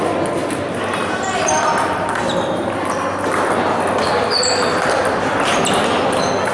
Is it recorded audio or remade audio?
recorded